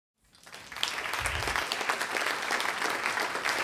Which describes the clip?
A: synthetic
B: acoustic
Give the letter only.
B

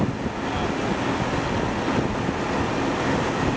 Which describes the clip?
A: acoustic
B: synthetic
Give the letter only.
A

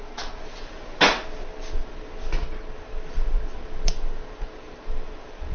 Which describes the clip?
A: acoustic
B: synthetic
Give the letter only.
A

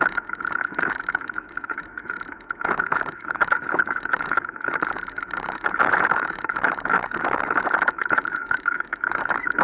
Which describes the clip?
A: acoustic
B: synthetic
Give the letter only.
B